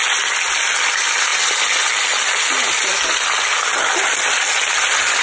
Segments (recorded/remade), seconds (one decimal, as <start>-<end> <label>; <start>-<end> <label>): 0.0-5.2 recorded